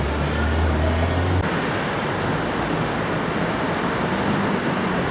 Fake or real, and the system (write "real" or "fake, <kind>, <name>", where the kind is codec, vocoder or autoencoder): real